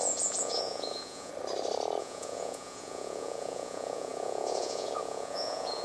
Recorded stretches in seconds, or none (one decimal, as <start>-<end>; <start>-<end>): 1.3-2.0